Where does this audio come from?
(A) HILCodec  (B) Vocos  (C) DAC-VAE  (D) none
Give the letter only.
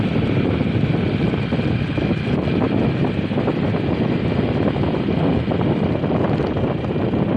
D